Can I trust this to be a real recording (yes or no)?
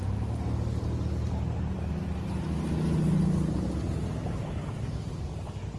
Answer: yes